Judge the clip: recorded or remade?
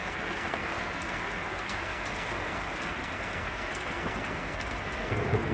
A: remade